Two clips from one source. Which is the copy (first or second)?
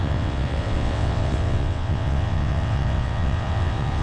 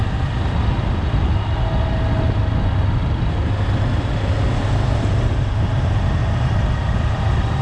first